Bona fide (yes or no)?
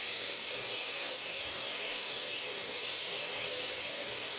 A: no